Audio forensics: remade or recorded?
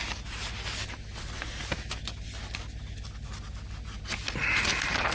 recorded